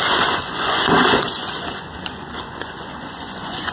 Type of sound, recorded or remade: remade